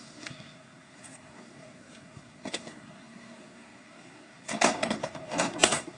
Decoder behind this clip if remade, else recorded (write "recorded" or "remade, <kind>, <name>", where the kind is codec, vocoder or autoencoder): remade, codec, SNAC